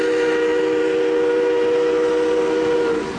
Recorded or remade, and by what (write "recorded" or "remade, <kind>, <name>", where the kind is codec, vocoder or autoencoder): recorded